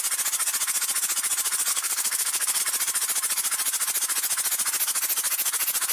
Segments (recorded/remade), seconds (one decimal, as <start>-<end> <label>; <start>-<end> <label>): 0.0-1.7 recorded; 1.7-2.6 remade; 2.6-5.9 recorded